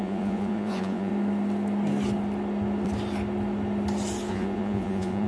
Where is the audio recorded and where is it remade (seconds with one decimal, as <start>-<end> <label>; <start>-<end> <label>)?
0.0-1.1 remade; 1.1-4.3 recorded; 4.3-5.3 remade